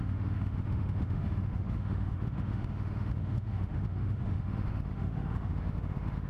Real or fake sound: fake